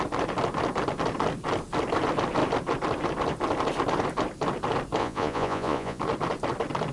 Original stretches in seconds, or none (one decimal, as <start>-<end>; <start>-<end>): 0.0-5.0; 6.0-6.9